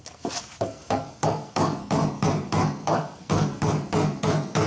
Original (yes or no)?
no